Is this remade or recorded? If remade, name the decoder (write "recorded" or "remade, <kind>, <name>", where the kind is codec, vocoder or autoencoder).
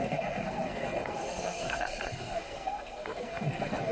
remade, codec, SNAC